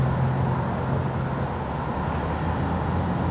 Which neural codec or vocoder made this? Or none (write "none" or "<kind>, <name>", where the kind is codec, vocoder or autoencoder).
none